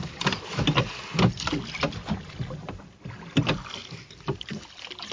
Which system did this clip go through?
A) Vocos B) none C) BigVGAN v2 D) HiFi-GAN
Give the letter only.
C